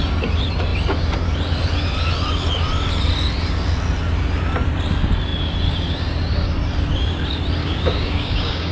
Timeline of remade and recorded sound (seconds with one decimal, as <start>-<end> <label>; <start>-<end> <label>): 0.0-7.6 recorded; 7.6-8.7 remade